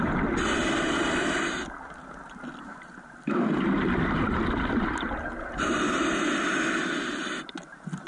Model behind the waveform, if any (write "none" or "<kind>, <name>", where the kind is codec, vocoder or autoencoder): none